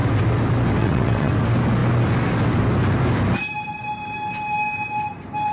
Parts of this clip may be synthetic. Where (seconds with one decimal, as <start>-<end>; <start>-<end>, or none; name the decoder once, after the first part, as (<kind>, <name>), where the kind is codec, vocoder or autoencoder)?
0.8-1.3 (vocoder, WaveNeXt)